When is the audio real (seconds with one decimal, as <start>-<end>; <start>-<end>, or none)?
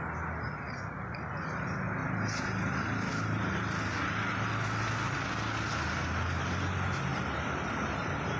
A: 0.0-8.4